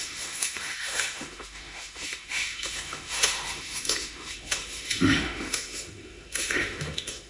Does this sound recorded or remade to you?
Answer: remade